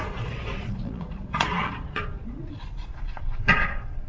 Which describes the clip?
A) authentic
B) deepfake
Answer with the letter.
B